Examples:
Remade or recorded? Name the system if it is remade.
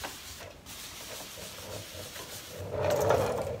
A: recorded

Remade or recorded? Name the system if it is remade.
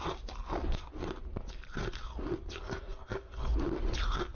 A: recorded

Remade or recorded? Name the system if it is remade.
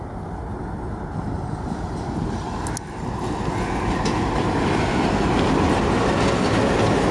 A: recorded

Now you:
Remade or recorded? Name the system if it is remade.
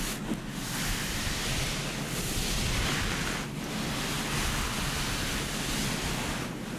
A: recorded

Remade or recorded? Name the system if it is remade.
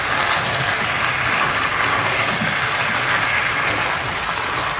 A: recorded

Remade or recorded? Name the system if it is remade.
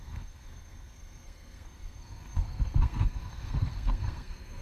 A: remade, codec, SNAC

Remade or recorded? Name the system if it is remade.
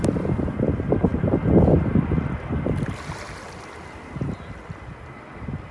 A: recorded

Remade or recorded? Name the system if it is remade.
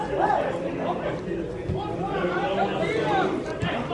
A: recorded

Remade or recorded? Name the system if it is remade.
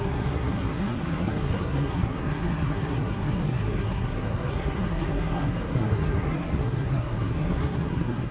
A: remade, codec, SNAC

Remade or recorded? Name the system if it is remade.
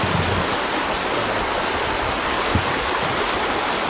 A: recorded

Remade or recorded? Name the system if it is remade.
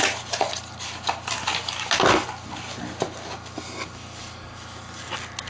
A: recorded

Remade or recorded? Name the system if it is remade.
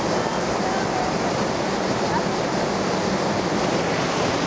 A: recorded